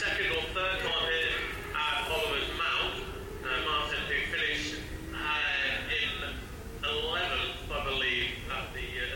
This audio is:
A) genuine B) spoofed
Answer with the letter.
A